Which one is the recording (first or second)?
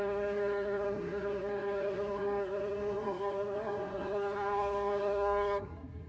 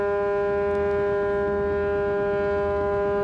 second